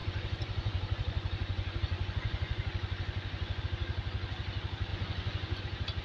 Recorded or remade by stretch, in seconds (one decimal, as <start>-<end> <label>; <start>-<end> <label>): 0.0-3.6 remade; 3.6-4.9 recorded; 4.9-5.6 remade; 5.6-6.0 recorded